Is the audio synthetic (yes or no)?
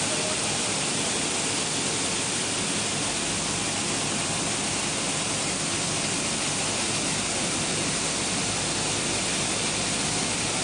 no